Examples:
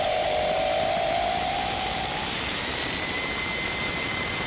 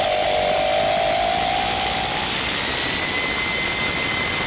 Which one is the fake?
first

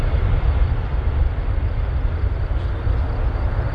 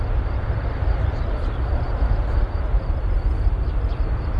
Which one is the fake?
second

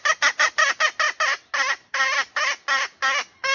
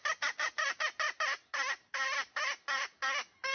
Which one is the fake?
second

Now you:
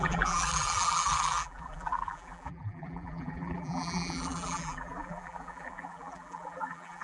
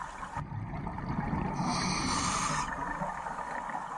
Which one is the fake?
first